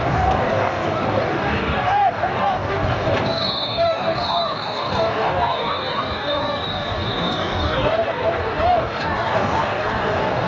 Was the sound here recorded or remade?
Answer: remade